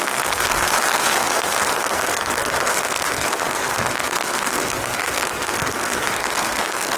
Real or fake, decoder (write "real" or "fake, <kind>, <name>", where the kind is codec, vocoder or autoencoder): fake, codec, SNAC